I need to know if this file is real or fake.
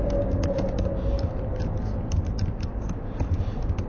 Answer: real